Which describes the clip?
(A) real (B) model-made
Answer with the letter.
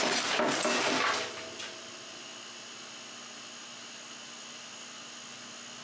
A